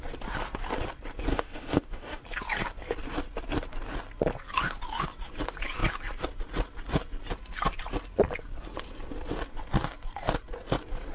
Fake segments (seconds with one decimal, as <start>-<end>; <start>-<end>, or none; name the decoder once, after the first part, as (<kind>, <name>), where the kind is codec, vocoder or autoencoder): 1.3-2.2 (autoencoder, DAC-VAE)

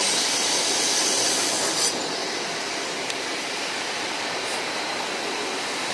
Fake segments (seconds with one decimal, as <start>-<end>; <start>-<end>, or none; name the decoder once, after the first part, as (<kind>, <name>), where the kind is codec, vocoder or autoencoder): 2.2-4.8 (vocoder, BigVGAN v2)

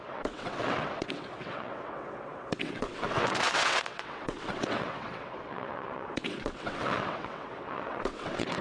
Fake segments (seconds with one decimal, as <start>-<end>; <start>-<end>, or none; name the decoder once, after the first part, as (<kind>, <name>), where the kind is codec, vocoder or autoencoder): 0.0-8.6 (vocoder, WaveNeXt)

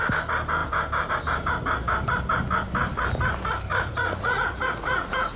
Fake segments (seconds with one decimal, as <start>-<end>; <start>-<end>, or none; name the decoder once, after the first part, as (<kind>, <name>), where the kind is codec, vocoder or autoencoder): 3.7-5.4 (vocoder, Vocos)